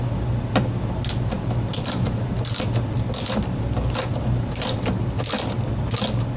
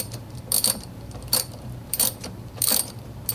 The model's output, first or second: second